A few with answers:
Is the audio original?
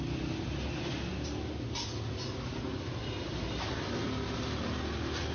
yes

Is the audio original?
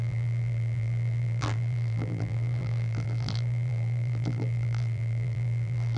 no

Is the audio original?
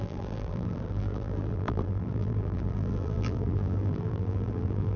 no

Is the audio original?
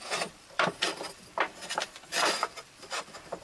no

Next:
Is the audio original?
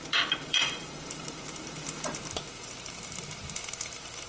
no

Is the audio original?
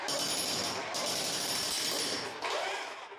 yes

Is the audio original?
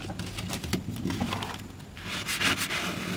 no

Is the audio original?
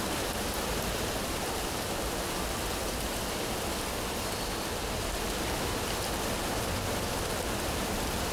no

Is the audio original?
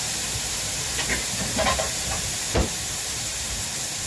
no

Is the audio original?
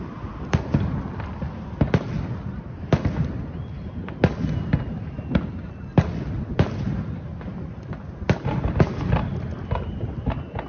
yes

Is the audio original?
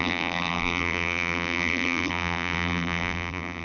no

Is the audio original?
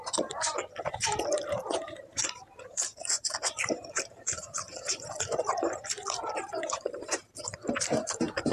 no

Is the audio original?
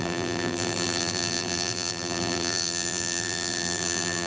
no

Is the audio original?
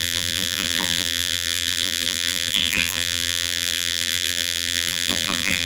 no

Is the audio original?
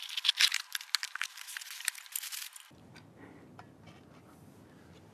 yes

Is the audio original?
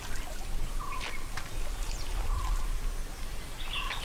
yes